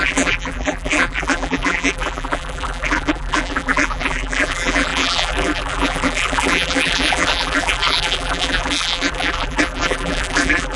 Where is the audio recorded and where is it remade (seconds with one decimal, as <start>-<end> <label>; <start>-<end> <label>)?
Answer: 0.0-10.8 remade